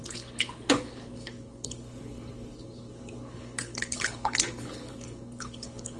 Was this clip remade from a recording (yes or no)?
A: yes